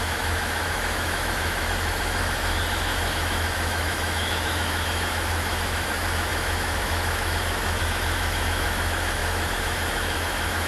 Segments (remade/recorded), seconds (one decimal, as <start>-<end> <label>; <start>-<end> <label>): 0.0-10.7 remade